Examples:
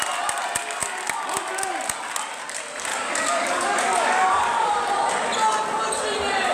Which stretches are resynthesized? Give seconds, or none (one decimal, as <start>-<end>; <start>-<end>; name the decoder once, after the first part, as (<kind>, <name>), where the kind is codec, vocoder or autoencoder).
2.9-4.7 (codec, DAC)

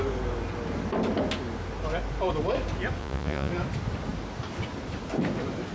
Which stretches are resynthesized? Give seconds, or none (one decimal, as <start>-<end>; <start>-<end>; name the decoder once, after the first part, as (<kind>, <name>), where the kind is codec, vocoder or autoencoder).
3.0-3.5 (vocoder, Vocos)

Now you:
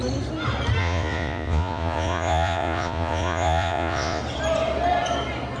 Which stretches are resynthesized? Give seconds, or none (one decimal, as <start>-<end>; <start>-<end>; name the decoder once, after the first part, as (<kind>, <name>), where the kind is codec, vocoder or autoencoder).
0.8-4.2 (vocoder, Vocos)

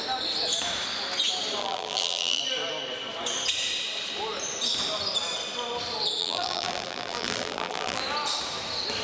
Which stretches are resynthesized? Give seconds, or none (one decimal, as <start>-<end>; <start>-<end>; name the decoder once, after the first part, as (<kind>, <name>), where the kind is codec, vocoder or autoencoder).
1.6-2.4 (vocoder, BigVGAN v2); 6.2-8.0

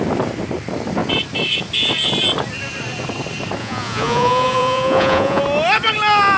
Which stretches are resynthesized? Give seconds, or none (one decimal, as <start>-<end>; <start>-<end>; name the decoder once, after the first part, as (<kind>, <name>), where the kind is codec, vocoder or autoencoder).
3.6-5.4 (vocoder, Vocos)